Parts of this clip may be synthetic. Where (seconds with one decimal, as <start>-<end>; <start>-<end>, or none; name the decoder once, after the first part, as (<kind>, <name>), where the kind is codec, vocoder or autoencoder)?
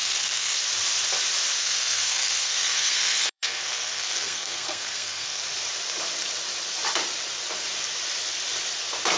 0.0-0.6 (codec, SNAC); 1.6-5.4